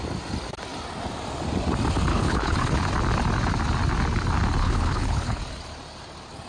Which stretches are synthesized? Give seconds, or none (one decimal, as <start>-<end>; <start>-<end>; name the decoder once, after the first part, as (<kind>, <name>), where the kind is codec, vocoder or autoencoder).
2.1-2.9 (codec, HILCodec); 4.6-5.4